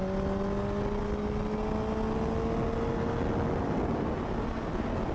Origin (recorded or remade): recorded